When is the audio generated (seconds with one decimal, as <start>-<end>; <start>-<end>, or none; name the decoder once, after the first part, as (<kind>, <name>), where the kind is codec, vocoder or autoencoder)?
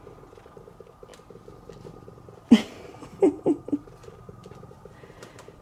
4.0-5.6 (vocoder, BigVGAN v2)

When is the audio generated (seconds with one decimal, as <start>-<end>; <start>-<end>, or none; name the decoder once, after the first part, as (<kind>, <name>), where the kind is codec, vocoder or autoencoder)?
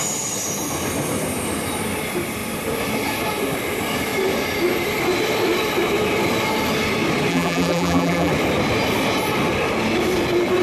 7.3-8.3 (vocoder, BigVGAN v2)